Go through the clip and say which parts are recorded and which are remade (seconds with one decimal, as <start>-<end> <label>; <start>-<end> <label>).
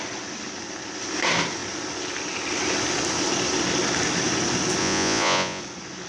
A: 0.0-4.8 recorded; 4.8-5.6 remade; 5.6-6.1 recorded